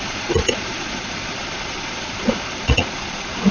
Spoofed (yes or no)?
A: yes